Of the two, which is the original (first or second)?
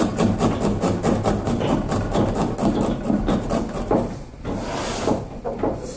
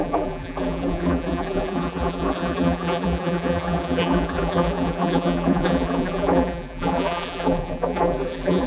first